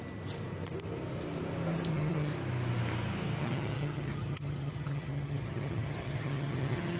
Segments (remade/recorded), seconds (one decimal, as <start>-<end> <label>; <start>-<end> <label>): 0.0-1.9 recorded; 1.9-2.3 remade; 2.3-3.4 recorded; 3.4-7.0 remade